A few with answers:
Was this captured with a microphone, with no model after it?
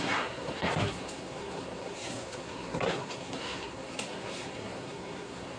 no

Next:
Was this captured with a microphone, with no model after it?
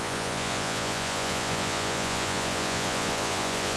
no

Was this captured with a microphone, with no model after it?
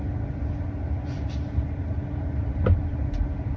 yes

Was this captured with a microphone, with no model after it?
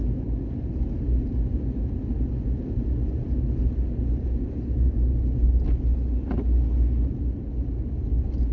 yes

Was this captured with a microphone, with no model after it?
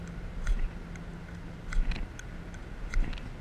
yes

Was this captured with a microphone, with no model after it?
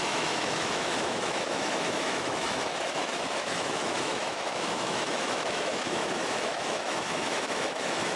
no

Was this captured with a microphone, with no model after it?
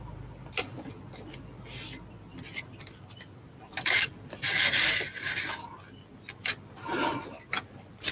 yes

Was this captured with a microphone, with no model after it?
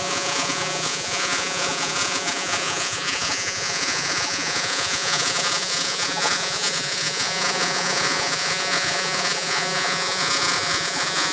no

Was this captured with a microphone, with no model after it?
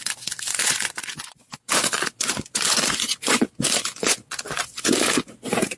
no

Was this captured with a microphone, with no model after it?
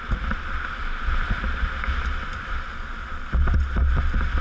yes